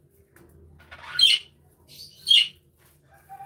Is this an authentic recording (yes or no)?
yes